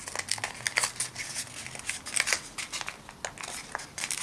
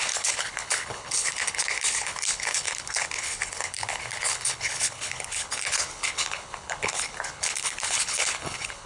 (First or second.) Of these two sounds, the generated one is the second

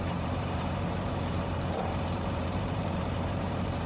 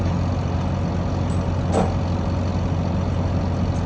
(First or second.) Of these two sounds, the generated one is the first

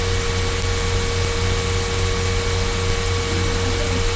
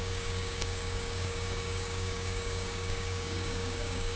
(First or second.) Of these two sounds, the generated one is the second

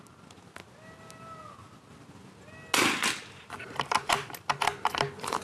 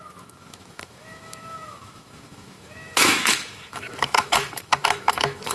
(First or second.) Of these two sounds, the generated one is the second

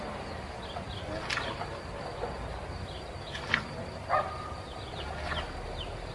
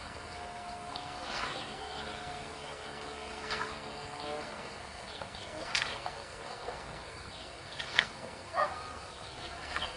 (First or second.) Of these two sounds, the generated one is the second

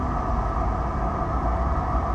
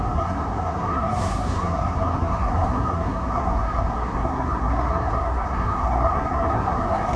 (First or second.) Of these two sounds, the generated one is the second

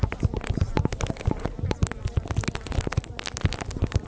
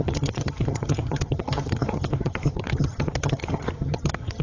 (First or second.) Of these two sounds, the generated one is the second